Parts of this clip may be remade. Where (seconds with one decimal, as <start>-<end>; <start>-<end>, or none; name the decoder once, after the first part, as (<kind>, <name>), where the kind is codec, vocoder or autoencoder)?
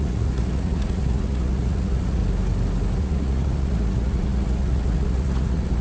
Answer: 0.0-2.2 (vocoder, Vocos); 3.0-5.8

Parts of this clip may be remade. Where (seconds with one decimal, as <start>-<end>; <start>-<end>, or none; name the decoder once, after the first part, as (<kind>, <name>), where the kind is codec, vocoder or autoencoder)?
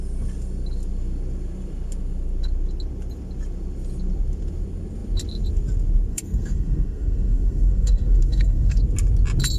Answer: 6.1-8.8 (codec, SNAC)